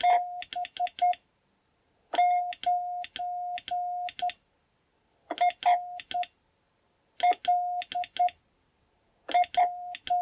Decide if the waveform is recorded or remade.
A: recorded